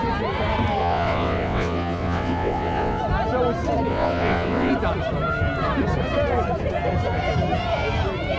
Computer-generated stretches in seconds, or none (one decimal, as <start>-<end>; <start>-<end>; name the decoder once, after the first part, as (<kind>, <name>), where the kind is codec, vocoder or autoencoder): 0.8-3.0 (vocoder, WaveNeXt); 3.9-4.7